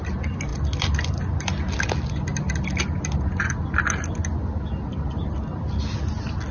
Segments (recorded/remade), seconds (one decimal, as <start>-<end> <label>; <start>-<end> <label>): 0.0-6.5 recorded